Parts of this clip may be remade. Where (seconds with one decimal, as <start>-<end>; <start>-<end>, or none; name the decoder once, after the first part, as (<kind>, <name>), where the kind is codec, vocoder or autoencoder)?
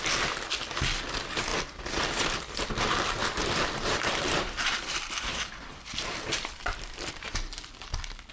3.2-7.2 (vocoder, BigVGAN v2)